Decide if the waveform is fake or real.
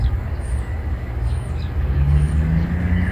fake